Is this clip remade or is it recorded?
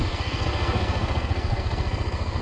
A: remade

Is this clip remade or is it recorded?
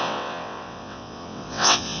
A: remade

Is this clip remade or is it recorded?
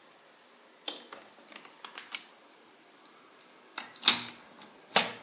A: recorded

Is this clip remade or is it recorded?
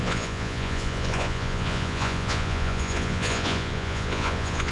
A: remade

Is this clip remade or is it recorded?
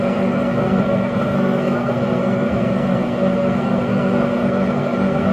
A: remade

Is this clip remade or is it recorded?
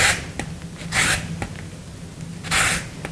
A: recorded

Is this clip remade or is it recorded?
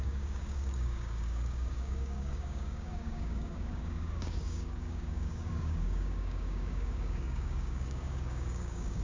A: remade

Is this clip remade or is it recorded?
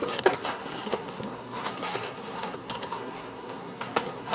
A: remade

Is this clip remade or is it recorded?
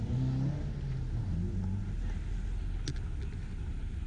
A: recorded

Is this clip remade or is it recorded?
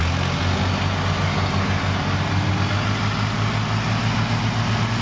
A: recorded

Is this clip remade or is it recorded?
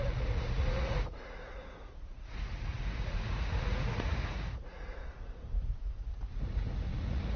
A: remade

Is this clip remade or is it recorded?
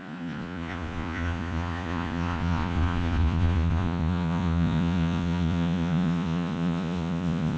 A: remade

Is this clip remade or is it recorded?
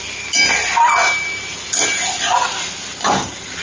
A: recorded